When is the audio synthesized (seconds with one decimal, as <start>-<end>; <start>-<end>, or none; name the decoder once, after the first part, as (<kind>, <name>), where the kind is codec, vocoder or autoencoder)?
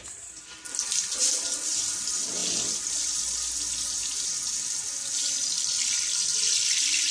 none